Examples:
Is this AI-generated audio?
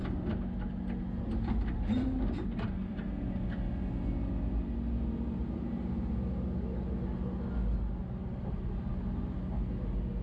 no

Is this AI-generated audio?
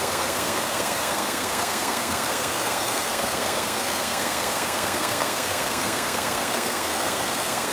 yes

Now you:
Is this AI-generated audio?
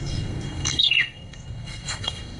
yes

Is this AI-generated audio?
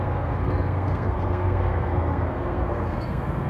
yes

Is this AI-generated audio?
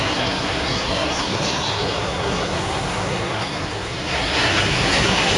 yes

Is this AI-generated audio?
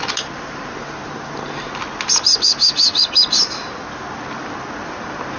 no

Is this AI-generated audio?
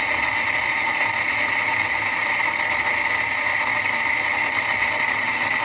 no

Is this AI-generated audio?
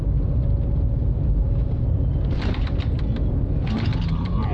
no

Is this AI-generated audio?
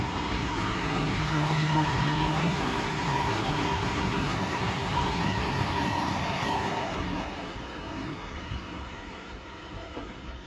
yes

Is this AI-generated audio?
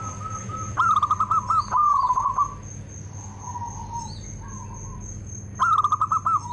no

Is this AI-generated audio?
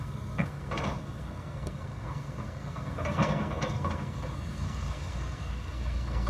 yes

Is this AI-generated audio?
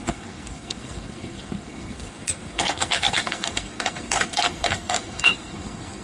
yes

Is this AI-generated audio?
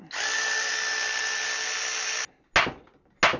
no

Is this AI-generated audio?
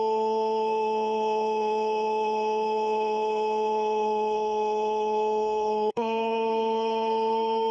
yes